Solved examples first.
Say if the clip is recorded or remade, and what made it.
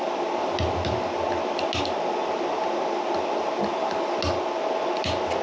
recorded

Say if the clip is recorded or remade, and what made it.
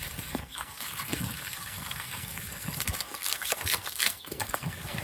remade, codec, SNAC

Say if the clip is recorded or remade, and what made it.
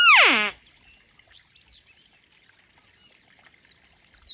recorded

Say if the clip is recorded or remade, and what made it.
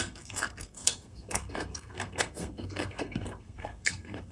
remade, codec, SNAC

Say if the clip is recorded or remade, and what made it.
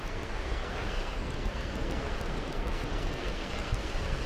remade, codec, SNAC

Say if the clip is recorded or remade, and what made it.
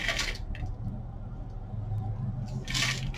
recorded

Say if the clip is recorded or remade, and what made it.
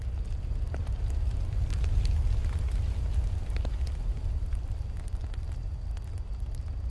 recorded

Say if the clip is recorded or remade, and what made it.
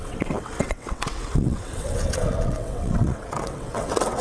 remade, vocoder, WaveNeXt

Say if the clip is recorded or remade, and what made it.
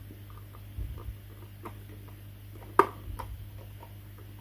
recorded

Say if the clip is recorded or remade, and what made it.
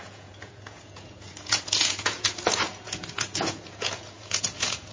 remade, vocoder, Vocos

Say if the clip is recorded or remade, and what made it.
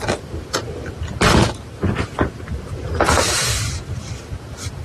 recorded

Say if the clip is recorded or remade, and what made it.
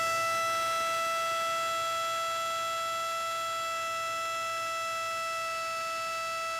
recorded